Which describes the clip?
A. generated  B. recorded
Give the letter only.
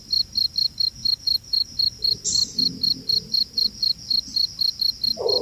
B